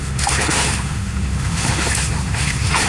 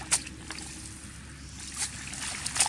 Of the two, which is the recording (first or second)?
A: second